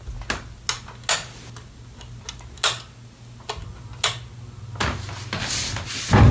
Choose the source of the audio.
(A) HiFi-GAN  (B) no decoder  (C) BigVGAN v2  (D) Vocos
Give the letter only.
B